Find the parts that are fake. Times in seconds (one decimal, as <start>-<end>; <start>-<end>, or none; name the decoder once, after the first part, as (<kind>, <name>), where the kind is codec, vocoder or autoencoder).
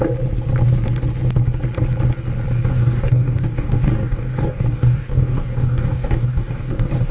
2.7-7.1 (codec, DAC)